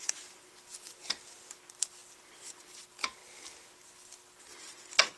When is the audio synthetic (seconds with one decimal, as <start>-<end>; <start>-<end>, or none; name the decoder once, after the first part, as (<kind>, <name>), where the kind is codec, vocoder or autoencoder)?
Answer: none